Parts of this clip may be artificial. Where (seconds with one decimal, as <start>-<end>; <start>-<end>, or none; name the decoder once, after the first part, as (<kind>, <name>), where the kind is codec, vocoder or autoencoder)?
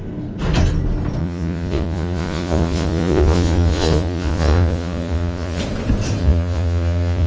1.2-5.6 (vocoder, Vocos); 6.2-7.3